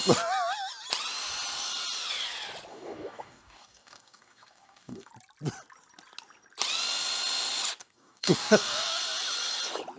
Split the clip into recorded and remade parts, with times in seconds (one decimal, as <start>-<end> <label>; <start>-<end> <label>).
0.0-2.7 recorded; 2.7-5.1 remade; 5.1-7.8 recorded; 7.8-9.0 remade; 9.0-10.0 recorded